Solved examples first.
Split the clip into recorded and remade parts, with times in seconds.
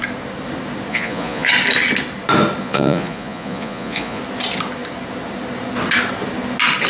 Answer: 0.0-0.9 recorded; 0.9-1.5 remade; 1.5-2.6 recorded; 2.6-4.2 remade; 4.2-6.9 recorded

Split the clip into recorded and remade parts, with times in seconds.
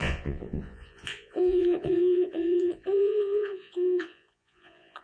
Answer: 0.0-5.0 remade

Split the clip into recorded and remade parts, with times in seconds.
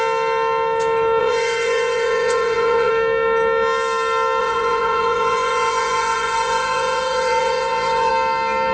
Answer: 0.0-1.2 recorded; 1.2-2.9 remade; 2.9-4.4 recorded; 4.4-8.1 remade; 8.1-8.7 recorded